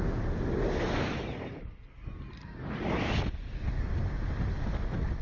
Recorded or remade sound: recorded